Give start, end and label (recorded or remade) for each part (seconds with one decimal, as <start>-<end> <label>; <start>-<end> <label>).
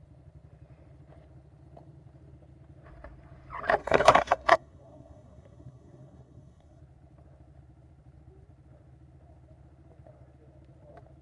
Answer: 0.0-3.8 recorded; 3.8-6.8 remade; 6.8-11.2 recorded